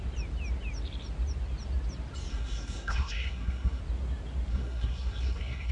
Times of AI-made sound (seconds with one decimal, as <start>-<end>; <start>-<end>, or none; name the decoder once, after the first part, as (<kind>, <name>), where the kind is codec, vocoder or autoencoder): 2.3-3.8 (codec, SNAC); 4.5-5.7

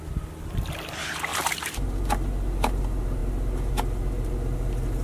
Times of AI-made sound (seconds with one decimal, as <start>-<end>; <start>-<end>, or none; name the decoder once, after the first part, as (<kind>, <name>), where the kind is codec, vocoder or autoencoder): none

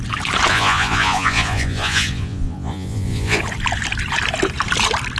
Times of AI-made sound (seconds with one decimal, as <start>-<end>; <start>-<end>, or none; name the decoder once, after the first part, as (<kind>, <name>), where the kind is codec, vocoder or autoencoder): 0.5-3.4 (vocoder, Vocos)

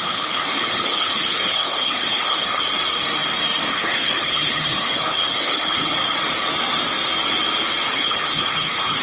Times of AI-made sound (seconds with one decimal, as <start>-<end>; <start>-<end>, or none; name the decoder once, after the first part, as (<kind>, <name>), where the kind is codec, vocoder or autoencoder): 0.0-2.6 (codec, HILCodec); 3.7-5.9; 7.9-9.0

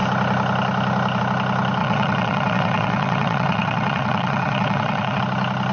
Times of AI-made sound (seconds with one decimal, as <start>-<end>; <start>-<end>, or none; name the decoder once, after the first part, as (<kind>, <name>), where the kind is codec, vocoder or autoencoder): 1.8-5.2 (vocoder, WaveNeXt)

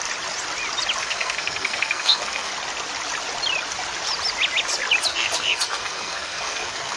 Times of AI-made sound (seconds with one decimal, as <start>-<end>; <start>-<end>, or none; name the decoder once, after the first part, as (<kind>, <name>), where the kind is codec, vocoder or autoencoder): 1.0-2.5 (codec, SNAC); 5.1-7.0

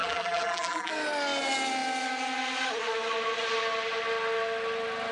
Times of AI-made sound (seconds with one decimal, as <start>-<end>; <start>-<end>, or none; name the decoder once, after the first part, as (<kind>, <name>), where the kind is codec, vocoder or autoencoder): 0.0-0.9 (vocoder, BigVGAN v2)

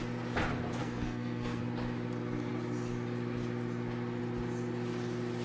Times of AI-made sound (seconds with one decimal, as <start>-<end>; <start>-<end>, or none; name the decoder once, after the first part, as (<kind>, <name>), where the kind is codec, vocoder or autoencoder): 0.8-1.6 (codec, SNAC)